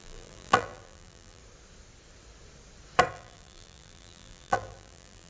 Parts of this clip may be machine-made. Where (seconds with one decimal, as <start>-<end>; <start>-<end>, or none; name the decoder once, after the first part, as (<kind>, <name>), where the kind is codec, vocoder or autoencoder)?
0.0-1.4 (vocoder, BigVGAN v2); 3.1-5.3